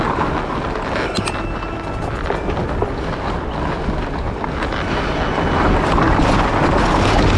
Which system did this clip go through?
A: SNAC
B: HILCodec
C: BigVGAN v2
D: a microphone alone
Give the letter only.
D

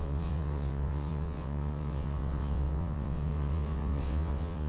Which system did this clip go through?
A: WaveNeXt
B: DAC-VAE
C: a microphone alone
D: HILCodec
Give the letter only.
A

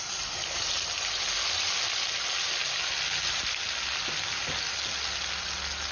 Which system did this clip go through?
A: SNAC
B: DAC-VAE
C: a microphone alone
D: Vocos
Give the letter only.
C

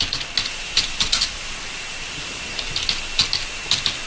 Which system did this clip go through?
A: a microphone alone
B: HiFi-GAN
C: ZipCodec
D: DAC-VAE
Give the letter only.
A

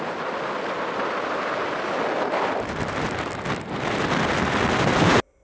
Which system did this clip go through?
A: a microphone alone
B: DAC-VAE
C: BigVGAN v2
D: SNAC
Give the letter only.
A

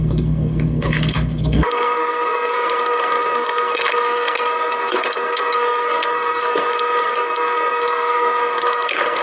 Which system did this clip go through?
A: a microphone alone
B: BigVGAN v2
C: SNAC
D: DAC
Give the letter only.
C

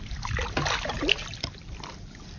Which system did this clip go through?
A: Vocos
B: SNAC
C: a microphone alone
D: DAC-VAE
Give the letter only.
C